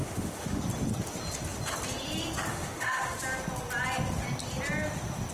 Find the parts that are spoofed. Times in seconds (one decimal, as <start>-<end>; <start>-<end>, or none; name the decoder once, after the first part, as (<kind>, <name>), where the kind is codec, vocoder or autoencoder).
0.0-0.6 (autoencoder, DAC-VAE); 2.5-3.2